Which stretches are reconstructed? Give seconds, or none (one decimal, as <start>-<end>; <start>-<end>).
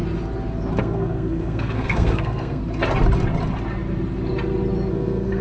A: 0.8-2.6; 4.9-5.4